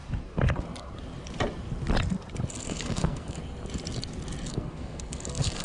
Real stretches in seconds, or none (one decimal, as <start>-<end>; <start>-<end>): 0.0-2.5; 3.4-4.5